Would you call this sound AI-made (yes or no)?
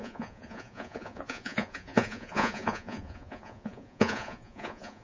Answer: yes